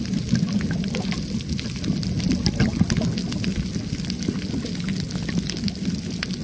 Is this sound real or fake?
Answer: real